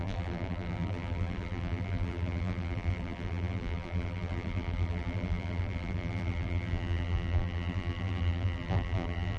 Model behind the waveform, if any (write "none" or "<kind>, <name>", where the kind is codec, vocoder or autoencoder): vocoder, BigVGAN v2